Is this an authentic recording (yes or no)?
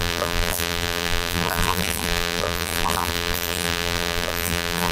no